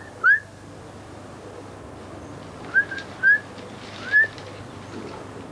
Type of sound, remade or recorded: recorded